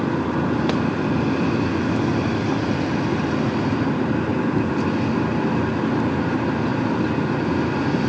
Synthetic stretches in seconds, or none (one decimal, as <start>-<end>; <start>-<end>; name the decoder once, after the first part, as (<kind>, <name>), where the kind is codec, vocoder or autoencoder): none